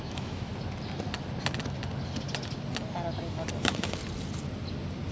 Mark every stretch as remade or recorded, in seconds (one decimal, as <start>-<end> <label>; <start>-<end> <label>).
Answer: 0.0-0.5 remade; 0.5-3.6 recorded; 3.6-4.0 remade; 4.0-5.1 recorded

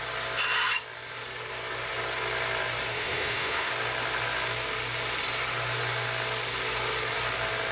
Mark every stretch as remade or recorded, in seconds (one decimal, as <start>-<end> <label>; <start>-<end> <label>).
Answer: 0.0-2.9 recorded; 2.9-3.7 remade; 3.7-7.7 recorded

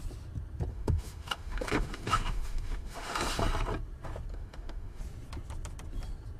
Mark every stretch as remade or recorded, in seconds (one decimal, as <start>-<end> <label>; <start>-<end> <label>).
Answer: 0.0-0.7 recorded; 0.7-3.4 remade; 3.4-4.3 recorded; 4.3-5.0 remade; 5.0-6.4 recorded

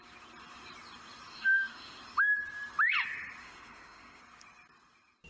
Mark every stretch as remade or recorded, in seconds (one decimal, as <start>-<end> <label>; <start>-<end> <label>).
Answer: 0.0-1.3 recorded; 1.3-2.0 remade; 2.0-3.4 recorded; 3.4-4.2 remade; 4.2-5.3 recorded

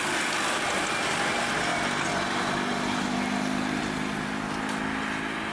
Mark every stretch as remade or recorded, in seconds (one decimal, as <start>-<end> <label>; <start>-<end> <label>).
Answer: 0.0-5.5 recorded

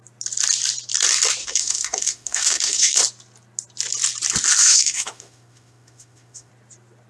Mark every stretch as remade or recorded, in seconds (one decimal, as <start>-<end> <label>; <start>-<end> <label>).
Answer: 0.0-1.4 recorded; 1.4-3.0 remade; 3.0-4.6 recorded; 4.6-6.5 remade; 6.5-7.1 recorded

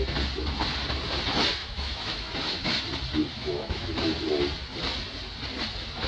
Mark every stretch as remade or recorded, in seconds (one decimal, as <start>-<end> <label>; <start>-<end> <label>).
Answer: 0.0-1.6 recorded; 1.6-2.8 remade; 2.8-3.3 recorded; 3.3-3.9 remade; 3.9-6.1 recorded

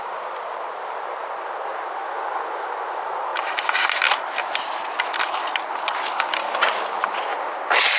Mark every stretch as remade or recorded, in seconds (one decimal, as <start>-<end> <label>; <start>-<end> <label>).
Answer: 0.0-8.0 recorded